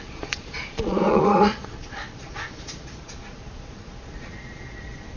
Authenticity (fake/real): fake